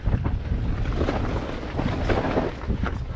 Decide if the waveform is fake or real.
real